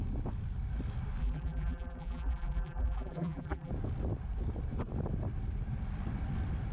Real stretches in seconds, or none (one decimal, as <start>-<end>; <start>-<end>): 0.0-1.2; 3.7-6.7